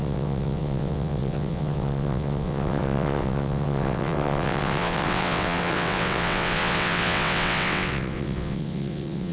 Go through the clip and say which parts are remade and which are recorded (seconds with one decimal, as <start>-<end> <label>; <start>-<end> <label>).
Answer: 0.0-9.3 remade